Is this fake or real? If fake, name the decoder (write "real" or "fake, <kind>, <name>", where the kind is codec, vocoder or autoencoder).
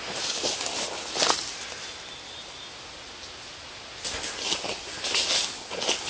real